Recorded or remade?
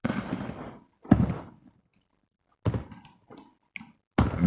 recorded